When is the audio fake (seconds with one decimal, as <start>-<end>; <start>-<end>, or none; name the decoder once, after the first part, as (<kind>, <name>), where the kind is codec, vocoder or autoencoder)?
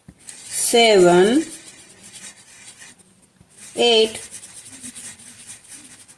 none